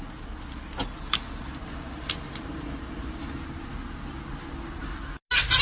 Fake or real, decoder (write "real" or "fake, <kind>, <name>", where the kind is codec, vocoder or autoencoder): real